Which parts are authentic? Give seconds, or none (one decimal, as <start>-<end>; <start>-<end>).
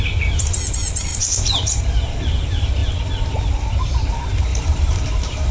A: 0.0-1.1; 1.8-4.5